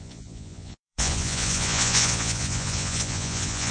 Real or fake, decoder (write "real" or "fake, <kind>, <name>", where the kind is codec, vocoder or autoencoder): fake, vocoder, Vocos